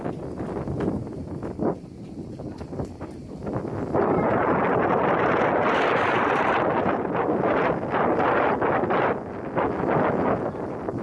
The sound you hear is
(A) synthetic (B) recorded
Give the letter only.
B